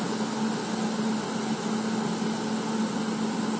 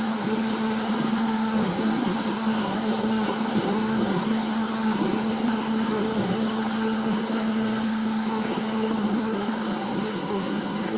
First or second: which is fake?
second